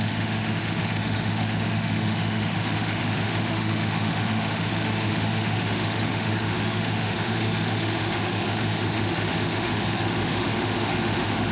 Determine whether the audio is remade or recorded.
remade